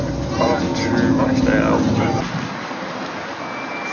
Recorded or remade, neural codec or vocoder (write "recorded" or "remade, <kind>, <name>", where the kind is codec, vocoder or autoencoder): recorded